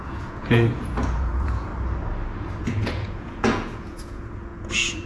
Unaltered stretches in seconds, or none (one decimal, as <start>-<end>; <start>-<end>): 1.7-2.7